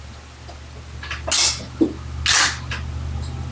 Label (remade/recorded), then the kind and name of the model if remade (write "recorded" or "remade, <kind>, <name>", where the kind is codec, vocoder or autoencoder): recorded